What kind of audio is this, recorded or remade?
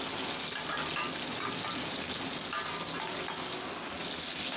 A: recorded